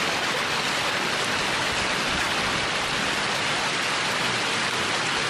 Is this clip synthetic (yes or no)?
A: no